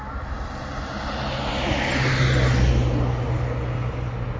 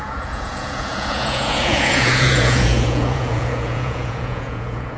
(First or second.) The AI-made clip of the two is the second